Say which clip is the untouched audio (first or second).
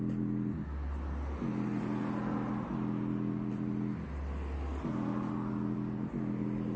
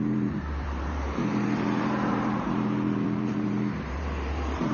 first